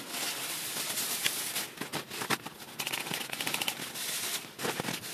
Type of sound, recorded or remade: recorded